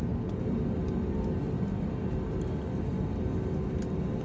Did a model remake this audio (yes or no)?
no